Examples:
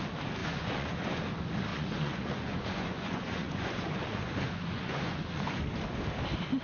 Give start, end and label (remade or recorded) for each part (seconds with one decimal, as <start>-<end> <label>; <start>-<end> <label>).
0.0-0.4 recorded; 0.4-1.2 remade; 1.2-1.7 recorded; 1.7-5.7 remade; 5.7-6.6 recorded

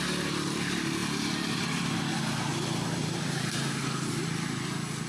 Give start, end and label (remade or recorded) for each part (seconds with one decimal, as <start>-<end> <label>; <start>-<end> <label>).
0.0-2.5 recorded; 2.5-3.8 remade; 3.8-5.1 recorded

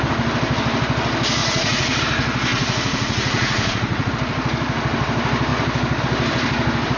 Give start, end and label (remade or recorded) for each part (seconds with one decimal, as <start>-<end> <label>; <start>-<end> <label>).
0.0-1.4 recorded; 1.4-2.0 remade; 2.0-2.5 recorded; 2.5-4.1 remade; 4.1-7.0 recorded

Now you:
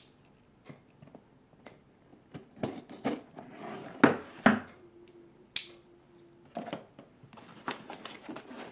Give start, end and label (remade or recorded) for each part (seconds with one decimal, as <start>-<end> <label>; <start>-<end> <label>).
0.0-8.7 recorded

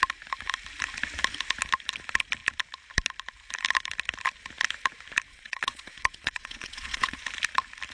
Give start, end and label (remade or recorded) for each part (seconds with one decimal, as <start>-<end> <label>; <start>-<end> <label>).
0.0-5.3 recorded; 5.3-7.2 remade; 7.2-7.9 recorded